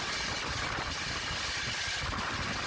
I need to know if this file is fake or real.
real